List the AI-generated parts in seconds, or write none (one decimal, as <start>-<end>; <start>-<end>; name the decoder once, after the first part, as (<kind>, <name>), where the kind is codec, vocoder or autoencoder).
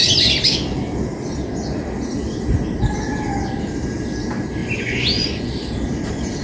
4.6-5.5 (vocoder, Vocos)